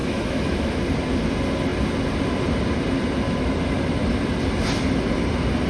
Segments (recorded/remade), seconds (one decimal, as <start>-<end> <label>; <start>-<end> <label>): 0.0-0.8 remade; 0.8-5.7 recorded